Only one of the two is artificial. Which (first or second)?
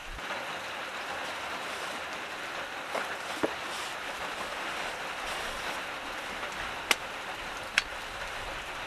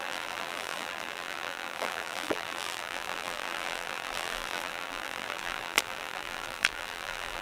second